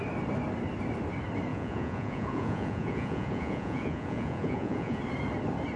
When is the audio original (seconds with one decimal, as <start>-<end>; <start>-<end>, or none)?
0.0-1.5; 5.0-5.8